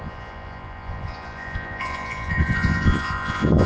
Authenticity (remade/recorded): remade